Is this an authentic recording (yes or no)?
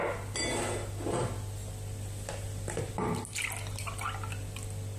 yes